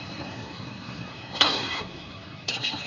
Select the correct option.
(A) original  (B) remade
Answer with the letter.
B